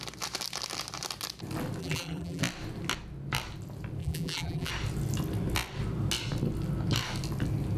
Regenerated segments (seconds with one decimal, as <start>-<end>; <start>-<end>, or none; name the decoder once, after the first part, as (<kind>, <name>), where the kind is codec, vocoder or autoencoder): 1.8-2.4 (vocoder, BigVGAN v2); 4.0-4.7

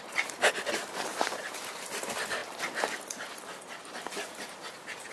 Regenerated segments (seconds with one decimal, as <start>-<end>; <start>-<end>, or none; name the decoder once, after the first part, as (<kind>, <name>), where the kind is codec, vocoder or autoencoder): none

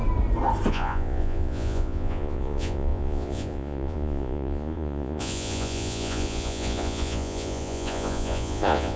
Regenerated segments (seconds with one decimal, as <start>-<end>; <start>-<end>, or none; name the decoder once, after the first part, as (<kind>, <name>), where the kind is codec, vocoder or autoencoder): 0.7-9.0 (vocoder, Vocos)

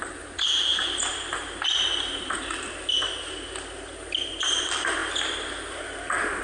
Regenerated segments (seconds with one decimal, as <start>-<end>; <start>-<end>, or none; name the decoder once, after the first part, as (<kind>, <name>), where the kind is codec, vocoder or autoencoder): none

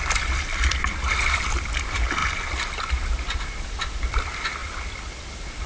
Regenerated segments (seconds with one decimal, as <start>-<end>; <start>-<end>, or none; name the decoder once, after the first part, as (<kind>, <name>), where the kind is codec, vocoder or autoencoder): none

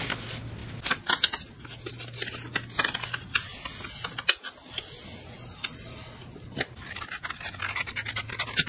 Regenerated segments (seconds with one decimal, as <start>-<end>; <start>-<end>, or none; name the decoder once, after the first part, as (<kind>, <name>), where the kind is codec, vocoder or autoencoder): none

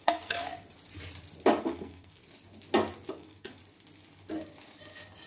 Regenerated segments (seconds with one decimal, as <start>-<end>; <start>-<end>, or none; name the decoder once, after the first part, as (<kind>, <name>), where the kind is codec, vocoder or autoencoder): 0.0-0.5 (codec, SNAC); 1.6-2.2; 3.1-3.6